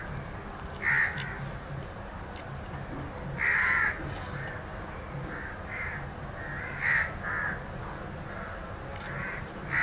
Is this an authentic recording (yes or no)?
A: yes